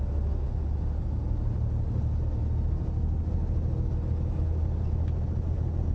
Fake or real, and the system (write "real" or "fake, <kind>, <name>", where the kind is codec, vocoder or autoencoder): real